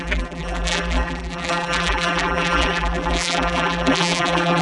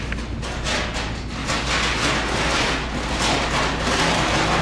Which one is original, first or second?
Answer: second